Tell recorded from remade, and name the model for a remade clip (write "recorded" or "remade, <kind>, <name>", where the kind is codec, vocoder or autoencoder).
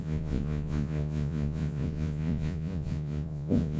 remade, vocoder, Vocos